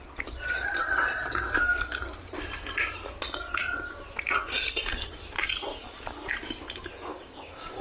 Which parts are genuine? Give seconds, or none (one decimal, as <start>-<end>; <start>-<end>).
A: 0.0-7.1